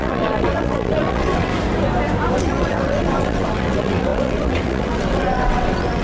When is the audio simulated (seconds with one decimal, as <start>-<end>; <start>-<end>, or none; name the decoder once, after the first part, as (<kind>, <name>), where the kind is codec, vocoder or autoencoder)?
0.0-1.5 (vocoder, WaveNeXt); 2.4-6.0